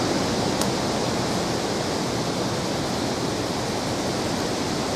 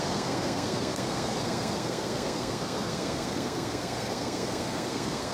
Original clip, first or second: first